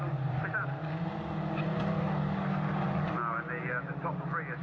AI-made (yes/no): no